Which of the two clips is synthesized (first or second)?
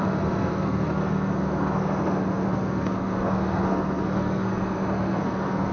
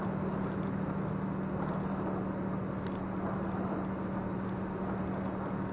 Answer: first